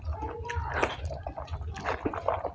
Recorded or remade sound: recorded